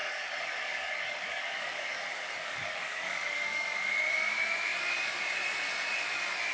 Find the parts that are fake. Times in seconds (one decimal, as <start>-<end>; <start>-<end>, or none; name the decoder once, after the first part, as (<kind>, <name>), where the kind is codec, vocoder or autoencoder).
0.0-3.9 (codec, DAC)